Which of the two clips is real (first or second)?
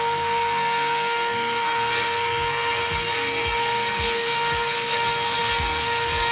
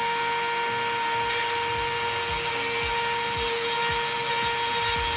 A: second